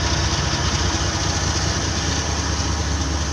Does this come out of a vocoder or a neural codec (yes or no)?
no